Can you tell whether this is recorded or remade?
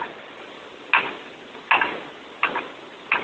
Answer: recorded